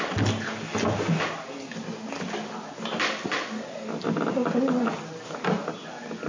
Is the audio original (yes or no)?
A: yes